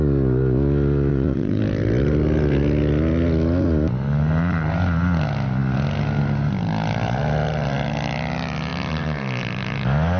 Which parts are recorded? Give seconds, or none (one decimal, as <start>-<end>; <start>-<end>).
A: 0.0-1.1; 1.6-10.2